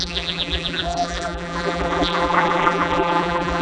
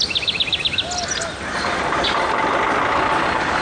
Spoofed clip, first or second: first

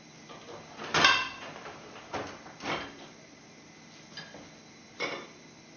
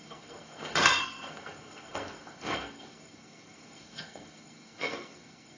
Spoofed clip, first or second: second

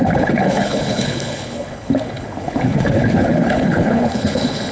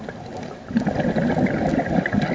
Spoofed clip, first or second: first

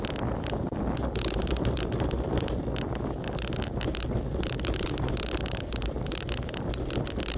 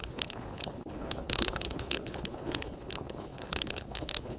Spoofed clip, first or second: second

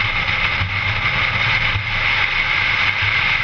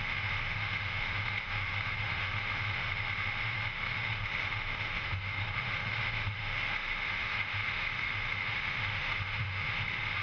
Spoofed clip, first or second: second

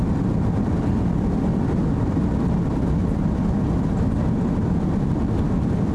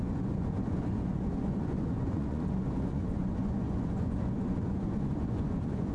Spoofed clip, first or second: second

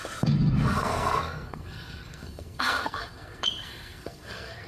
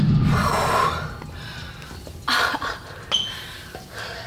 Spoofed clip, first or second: first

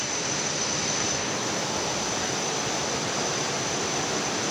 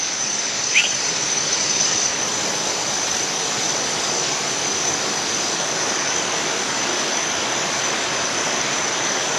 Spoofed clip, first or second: second